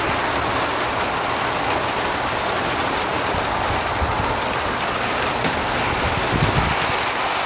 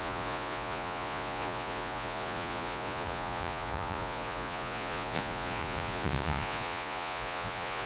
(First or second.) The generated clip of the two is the second